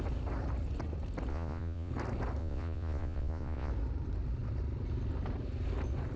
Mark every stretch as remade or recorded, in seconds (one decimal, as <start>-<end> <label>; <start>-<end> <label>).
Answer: 0.0-1.3 recorded; 1.3-1.9 remade; 1.9-2.4 recorded; 2.4-3.7 remade; 3.7-6.2 recorded